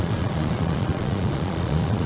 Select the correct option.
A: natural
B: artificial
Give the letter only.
B